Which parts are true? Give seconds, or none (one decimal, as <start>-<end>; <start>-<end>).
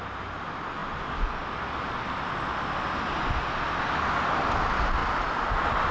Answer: 0.0-5.9